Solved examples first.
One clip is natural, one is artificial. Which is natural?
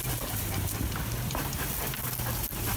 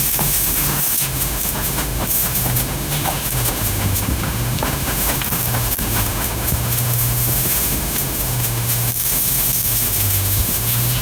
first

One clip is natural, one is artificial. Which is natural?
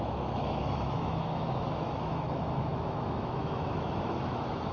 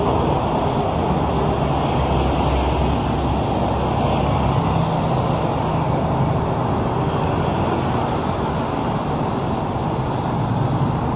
second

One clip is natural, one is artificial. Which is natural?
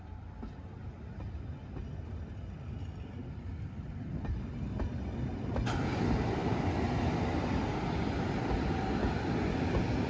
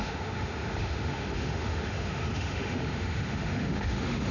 first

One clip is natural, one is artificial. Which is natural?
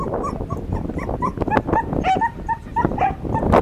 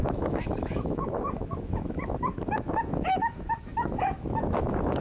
first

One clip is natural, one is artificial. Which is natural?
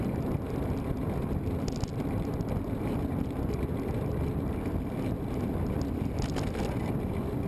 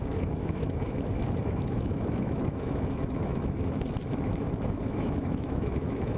first